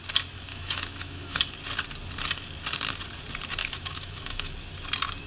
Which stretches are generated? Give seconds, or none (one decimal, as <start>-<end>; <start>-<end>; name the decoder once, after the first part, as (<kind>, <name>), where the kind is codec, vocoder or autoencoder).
0.5-1.4 (autoencoder, DAC-VAE); 3.6-4.5